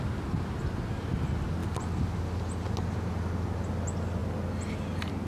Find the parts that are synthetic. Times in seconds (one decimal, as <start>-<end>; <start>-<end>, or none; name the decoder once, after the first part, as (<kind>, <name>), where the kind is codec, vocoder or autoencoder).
none